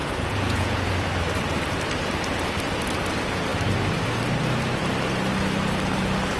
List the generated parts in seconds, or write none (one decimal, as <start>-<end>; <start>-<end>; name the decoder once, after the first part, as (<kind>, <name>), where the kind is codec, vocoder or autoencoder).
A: 0.0-0.9 (vocoder, Vocos)